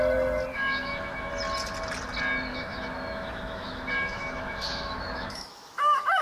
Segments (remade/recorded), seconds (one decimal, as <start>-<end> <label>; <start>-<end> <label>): 0.0-0.5 recorded; 0.5-1.3 remade; 1.3-2.5 recorded; 2.5-6.2 remade

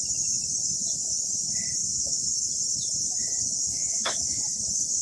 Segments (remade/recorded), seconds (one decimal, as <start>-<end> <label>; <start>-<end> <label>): 0.0-1.8 recorded; 1.8-2.5 remade; 2.5-3.6 recorded; 3.6-4.4 remade; 4.4-5.0 recorded

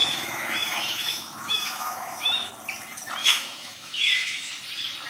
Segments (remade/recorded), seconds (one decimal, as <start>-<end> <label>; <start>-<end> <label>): 0.0-2.5 remade; 2.5-3.2 recorded; 3.2-4.5 remade; 4.5-5.1 recorded

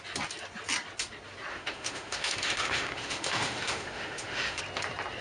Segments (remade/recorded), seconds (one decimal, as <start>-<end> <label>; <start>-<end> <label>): 0.0-1.5 recorded; 1.5-4.6 remade; 4.6-5.2 recorded